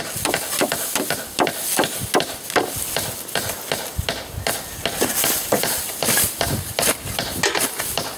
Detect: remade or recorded recorded